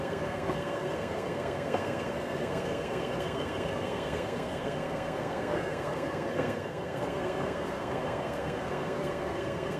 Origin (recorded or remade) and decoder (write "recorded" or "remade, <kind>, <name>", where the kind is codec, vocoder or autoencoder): remade, codec, SNAC